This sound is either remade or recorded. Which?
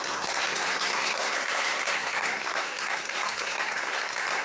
remade